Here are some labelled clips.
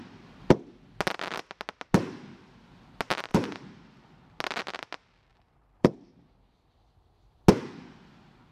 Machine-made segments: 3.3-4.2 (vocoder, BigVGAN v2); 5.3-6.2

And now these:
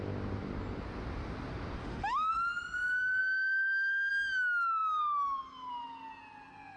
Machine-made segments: 1.8-2.3 (autoencoder, DAC-VAE); 3.2-4.1

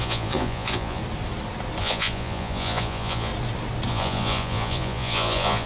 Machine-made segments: 0.0-1.0 (vocoder, Vocos); 1.8-3.3; 3.9-5.7

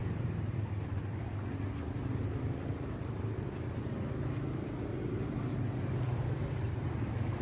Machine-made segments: none

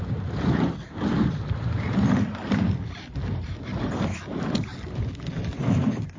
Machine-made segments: 0.0-4.7 (vocoder, BigVGAN v2); 5.4-6.2

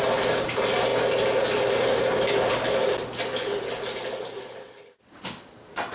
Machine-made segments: none